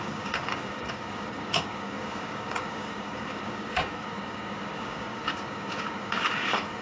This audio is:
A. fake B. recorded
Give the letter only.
A